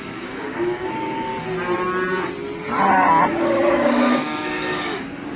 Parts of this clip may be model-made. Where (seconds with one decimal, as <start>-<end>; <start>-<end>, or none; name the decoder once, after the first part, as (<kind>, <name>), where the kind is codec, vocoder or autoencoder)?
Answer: 0.0-1.3 (codec, DAC); 3.3-5.4